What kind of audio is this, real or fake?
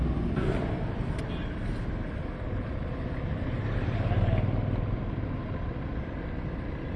real